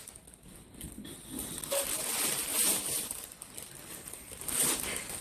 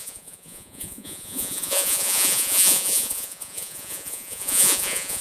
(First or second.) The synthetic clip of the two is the second